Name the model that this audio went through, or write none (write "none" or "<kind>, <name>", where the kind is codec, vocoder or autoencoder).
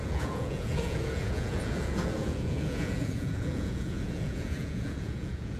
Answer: vocoder, Vocos